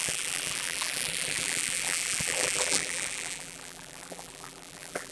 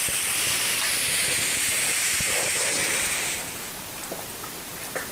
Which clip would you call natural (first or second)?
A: second